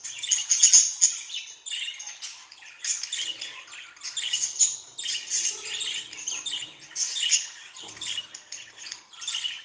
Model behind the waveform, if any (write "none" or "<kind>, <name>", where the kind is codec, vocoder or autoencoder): none